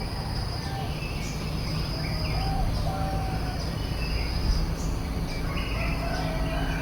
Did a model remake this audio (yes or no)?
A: no